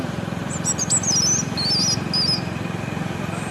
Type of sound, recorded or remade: recorded